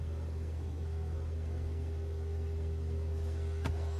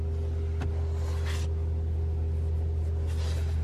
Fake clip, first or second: first